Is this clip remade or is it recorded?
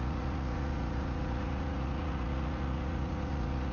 remade